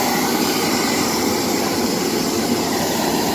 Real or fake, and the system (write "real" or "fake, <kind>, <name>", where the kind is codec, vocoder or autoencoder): fake, vocoder, BigVGAN v2